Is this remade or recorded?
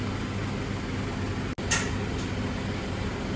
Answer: recorded